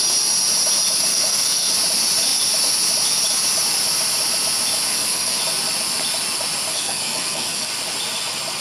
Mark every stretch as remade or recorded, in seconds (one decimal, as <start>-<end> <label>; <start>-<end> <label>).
0.0-1.1 recorded; 1.1-1.7 remade; 1.7-4.9 recorded; 4.9-5.4 remade; 5.4-6.7 recorded; 6.7-7.7 remade; 7.7-8.6 recorded